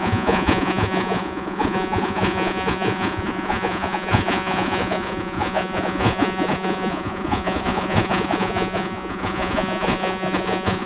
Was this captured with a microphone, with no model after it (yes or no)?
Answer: no